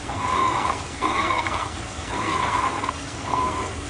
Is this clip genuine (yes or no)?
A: no